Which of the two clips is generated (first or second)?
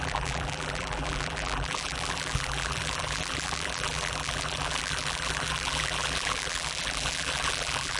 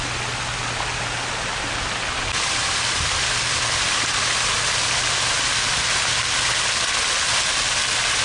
first